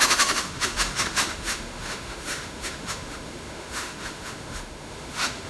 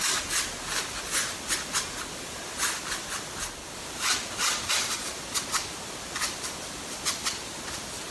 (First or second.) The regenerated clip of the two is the first